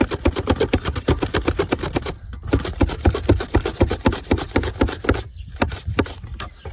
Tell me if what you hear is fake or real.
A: real